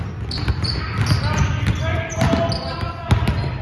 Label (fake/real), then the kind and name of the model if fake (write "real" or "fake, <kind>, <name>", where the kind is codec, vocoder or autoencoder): real